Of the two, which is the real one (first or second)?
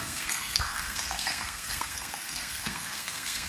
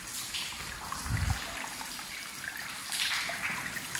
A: second